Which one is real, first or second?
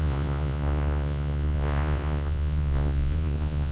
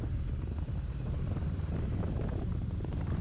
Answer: second